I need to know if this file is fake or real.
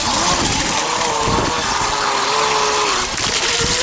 real